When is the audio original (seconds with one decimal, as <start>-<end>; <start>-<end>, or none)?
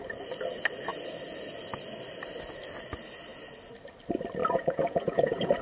0.0-4.4